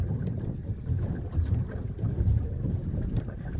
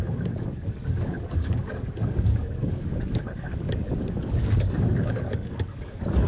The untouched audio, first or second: first